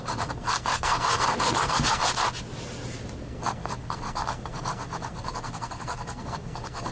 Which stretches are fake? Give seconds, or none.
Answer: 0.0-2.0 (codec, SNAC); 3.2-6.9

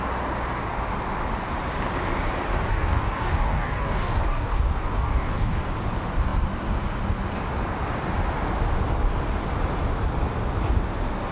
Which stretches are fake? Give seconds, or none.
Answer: 2.7-5.7 (codec, DAC)